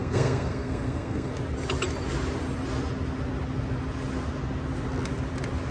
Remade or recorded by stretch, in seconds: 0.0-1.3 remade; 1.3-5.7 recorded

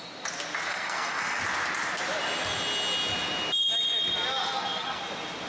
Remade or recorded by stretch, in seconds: 0.0-0.7 recorded; 0.7-1.4 remade; 1.4-4.4 recorded; 4.4-5.0 remade; 5.0-5.5 recorded